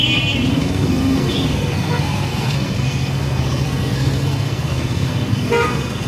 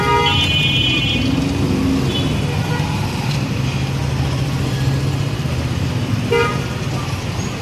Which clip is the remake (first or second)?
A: first